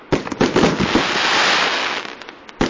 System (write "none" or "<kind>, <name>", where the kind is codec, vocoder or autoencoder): none